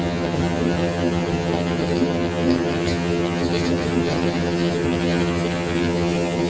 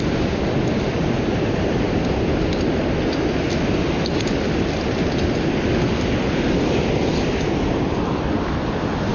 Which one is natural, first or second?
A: second